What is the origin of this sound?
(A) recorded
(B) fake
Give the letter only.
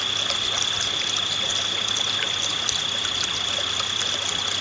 A